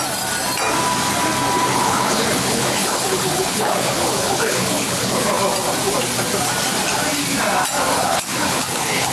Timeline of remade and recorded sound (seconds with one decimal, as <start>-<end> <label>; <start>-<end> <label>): 0.0-1.7 recorded; 1.7-5.4 remade; 5.4-7.9 recorded; 7.9-9.1 remade

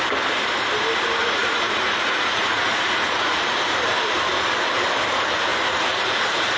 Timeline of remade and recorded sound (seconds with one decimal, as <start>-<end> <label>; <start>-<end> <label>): 0.0-1.2 recorded; 1.2-3.3 remade; 3.3-5.5 recorded; 5.5-6.6 remade